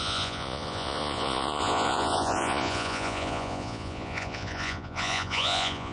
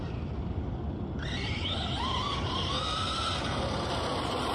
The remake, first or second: first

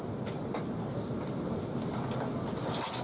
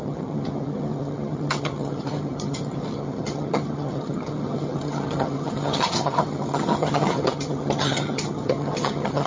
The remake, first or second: second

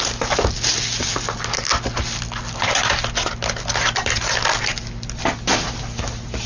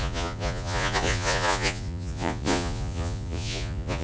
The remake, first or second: second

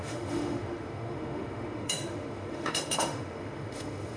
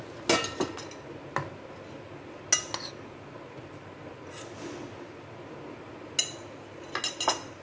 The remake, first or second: first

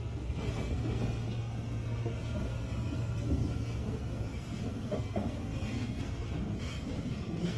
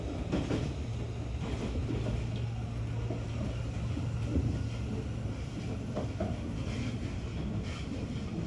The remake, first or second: first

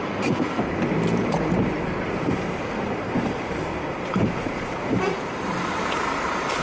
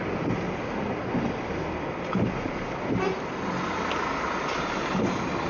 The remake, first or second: first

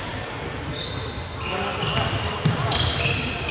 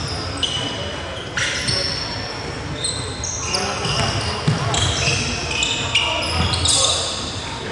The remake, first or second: first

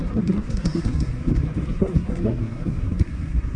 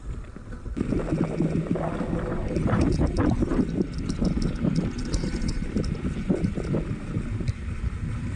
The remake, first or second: first